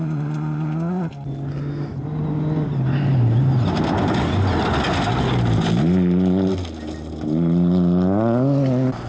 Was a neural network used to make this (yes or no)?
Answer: no